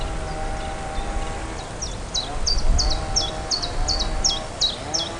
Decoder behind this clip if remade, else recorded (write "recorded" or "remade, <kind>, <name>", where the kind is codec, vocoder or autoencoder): recorded